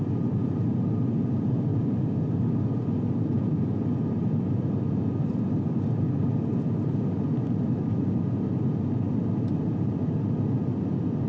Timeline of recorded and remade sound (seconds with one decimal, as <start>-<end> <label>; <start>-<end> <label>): 0.0-11.3 recorded